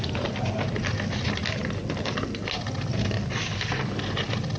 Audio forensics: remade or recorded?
recorded